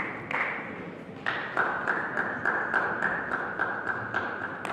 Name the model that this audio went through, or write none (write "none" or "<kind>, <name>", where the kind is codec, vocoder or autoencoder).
none